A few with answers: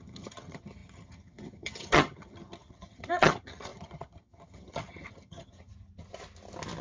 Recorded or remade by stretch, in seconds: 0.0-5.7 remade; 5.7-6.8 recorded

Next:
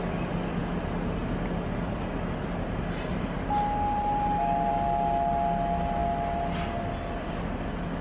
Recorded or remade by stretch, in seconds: 0.0-8.0 recorded

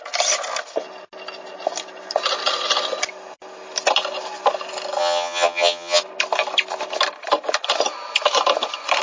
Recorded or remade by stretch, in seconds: 0.0-5.0 recorded; 5.0-6.0 remade; 6.0-9.0 recorded

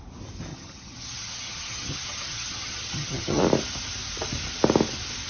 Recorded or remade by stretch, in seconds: 0.0-0.5 recorded; 0.5-3.4 remade; 3.4-5.3 recorded

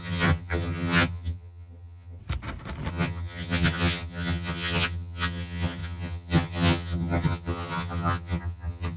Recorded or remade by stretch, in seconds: 0.0-2.2 remade; 2.2-2.9 recorded; 2.9-9.0 remade

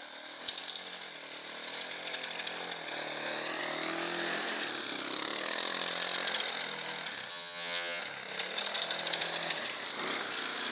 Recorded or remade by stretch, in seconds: 0.0-7.3 recorded; 7.3-8.0 remade; 8.0-10.7 recorded

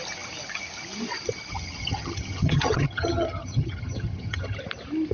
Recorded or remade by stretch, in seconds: 0.0-1.5 recorded; 1.5-4.6 remade; 4.6-5.1 recorded

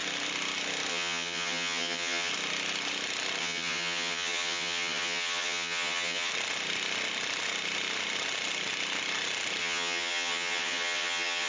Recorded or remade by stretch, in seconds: 0.0-0.9 recorded; 0.9-2.3 remade; 2.3-3.4 recorded; 3.4-6.3 remade; 6.3-9.6 recorded; 9.6-11.5 remade